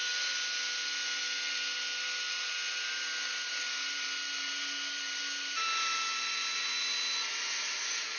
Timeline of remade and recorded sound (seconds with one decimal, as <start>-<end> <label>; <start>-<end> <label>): 0.0-8.2 recorded

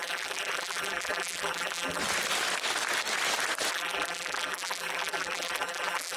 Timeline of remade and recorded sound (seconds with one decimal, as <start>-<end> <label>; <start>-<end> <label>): 0.0-2.0 remade; 2.0-3.7 recorded; 3.7-6.2 remade

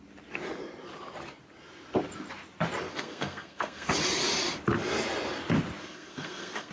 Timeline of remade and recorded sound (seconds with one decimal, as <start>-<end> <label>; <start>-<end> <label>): 0.0-2.9 recorded; 2.9-3.9 remade; 3.9-5.8 recorded; 5.8-6.7 remade

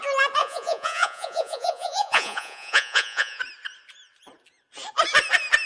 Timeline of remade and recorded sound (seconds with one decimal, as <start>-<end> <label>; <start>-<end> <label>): 0.0-0.4 recorded; 0.4-3.4 remade; 3.4-5.7 recorded

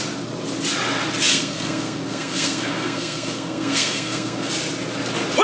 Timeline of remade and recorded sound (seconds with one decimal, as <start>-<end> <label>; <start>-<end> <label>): 0.0-1.3 recorded; 1.3-4.5 remade; 4.5-5.4 recorded

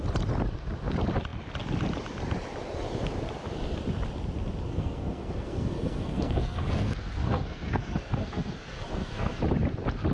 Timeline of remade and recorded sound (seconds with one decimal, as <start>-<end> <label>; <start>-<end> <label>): 0.0-4.7 recorded; 4.7-9.4 remade; 9.4-10.1 recorded